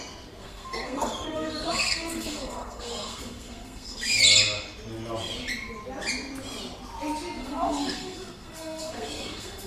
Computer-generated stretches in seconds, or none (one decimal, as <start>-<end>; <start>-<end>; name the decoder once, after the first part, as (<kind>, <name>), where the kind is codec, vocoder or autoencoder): 0.4-4.2 (codec, SNAC); 7.4-9.7